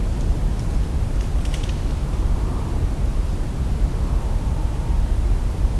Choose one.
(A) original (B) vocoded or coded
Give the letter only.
B